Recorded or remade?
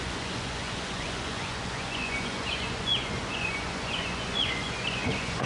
remade